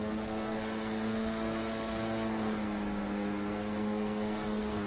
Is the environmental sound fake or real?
fake